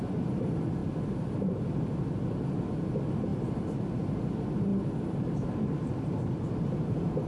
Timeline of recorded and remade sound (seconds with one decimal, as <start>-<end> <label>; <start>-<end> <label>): 0.0-0.8 recorded; 0.8-1.6 remade; 1.6-3.3 recorded; 3.3-4.1 remade; 4.1-4.7 recorded; 4.7-6.5 remade; 6.5-7.3 recorded